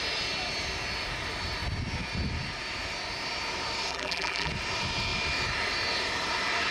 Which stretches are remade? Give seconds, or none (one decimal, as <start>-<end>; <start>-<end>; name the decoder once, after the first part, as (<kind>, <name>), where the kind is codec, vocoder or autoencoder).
3.9-4.5 (vocoder, BigVGAN v2)